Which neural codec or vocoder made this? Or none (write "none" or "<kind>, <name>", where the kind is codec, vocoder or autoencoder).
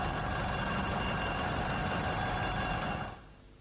none